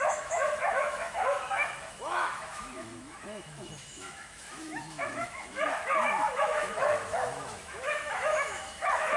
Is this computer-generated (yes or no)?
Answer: yes